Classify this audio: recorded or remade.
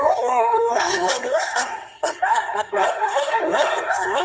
remade